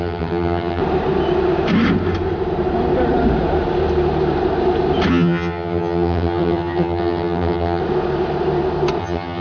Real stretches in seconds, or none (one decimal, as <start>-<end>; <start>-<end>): 0.8-5.1; 7.8-9.0